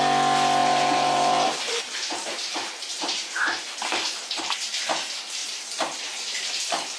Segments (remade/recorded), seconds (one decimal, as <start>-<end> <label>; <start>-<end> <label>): 0.0-0.6 recorded; 0.6-4.4 remade; 4.4-5.4 recorded; 5.4-6.4 remade; 6.4-7.0 recorded